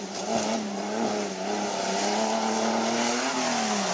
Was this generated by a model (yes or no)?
no